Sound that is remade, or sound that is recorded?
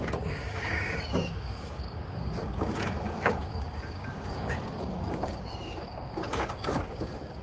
remade